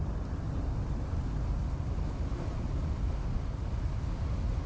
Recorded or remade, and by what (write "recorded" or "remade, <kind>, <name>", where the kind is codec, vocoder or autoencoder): recorded